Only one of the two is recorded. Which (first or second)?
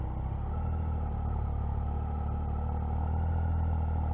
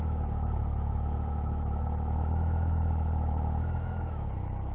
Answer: first